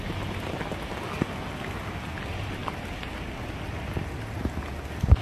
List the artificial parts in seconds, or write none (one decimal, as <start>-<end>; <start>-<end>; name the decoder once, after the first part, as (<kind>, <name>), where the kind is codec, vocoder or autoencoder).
none